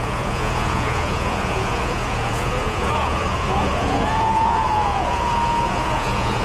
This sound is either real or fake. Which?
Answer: fake